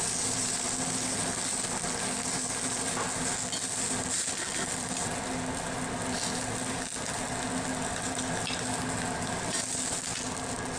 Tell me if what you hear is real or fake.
real